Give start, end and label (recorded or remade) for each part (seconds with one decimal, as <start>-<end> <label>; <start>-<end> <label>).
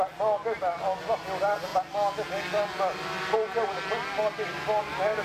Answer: 0.0-5.2 recorded